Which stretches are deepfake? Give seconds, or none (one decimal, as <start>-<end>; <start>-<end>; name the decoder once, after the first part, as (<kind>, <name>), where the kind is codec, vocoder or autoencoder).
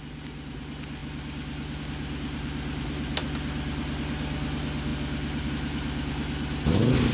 none